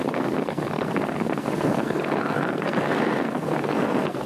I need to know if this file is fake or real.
fake